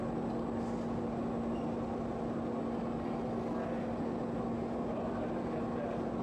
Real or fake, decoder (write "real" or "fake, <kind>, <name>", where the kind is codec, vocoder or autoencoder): real